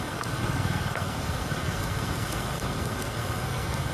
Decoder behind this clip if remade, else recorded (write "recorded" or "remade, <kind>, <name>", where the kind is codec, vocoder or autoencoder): remade, codec, SNAC